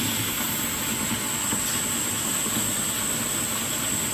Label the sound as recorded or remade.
recorded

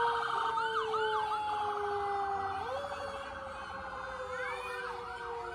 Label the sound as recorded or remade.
recorded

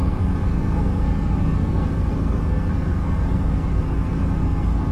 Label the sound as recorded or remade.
remade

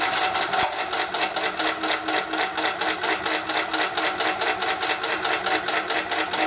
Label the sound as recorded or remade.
recorded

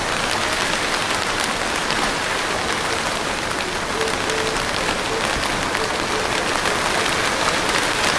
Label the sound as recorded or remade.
recorded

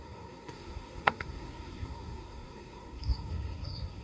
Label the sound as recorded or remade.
remade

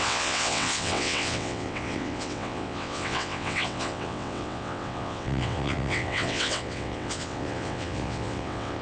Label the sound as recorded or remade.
remade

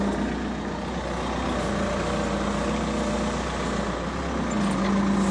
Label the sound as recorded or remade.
recorded